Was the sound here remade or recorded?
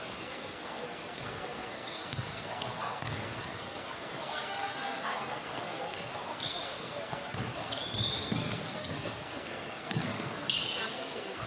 remade